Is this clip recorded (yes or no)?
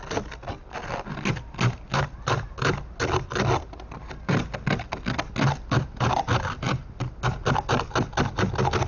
yes